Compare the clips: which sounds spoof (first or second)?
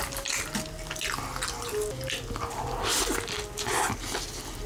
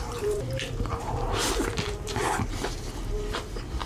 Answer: second